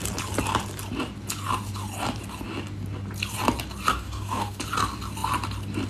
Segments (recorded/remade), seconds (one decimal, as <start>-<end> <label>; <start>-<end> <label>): 0.0-3.9 recorded; 3.9-4.6 remade; 4.6-5.9 recorded